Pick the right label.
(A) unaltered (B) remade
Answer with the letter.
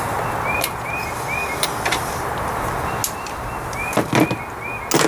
A